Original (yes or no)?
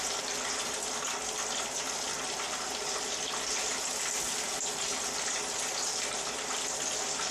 yes